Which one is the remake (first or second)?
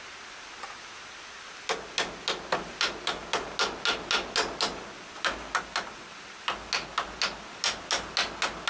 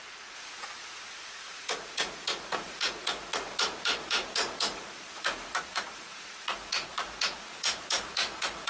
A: second